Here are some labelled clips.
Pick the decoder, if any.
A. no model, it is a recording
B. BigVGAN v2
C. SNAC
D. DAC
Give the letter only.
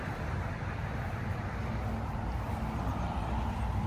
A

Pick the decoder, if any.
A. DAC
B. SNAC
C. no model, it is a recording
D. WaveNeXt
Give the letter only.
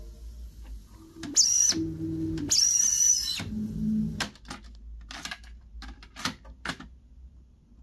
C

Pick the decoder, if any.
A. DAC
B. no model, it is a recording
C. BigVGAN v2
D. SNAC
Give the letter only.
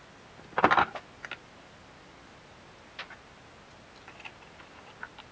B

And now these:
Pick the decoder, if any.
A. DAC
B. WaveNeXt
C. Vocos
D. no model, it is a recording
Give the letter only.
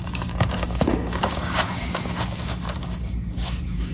A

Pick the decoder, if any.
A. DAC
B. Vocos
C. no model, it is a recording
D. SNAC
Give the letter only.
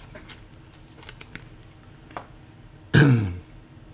C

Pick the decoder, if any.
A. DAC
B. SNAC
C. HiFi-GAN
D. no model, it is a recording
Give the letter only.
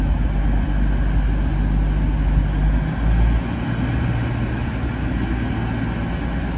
D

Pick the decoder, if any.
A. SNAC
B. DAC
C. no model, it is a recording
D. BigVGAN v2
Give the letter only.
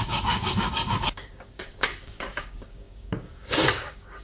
B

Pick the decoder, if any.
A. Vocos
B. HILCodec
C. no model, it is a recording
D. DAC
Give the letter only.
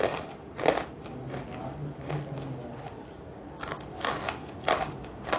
C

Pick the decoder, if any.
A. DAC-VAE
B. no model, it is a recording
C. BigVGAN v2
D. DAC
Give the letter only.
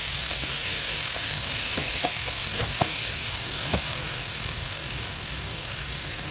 D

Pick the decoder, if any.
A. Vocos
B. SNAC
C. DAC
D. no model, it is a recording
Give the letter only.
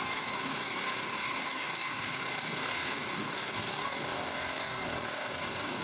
C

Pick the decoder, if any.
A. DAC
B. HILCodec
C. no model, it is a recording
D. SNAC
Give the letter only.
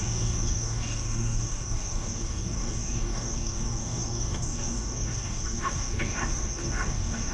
A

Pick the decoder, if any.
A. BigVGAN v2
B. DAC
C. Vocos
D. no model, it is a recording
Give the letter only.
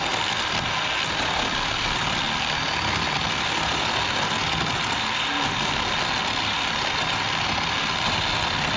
D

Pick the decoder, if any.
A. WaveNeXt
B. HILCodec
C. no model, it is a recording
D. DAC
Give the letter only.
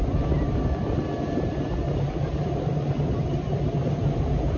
C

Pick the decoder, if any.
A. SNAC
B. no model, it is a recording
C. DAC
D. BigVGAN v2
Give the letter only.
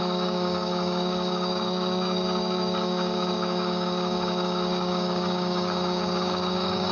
C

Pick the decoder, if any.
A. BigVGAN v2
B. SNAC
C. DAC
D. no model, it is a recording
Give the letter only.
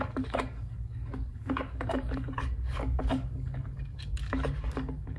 C